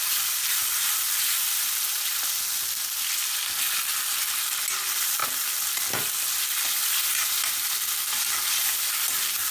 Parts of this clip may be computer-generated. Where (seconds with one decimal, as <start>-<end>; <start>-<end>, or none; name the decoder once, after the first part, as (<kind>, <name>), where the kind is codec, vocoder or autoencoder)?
0.6-2.0 (vocoder, BigVGAN v2)